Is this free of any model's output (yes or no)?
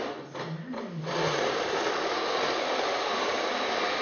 yes